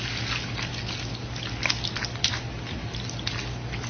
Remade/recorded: recorded